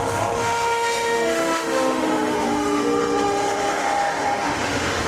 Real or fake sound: fake